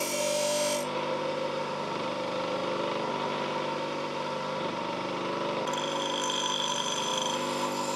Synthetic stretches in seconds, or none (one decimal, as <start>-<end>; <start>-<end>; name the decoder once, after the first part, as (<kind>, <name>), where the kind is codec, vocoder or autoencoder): 0.0-2.6 (vocoder, BigVGAN v2); 3.1-8.0